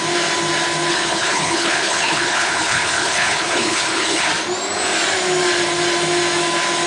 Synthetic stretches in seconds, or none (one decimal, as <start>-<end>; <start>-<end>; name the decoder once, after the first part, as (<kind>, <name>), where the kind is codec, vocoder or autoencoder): 0.9-4.3 (codec, HILCodec)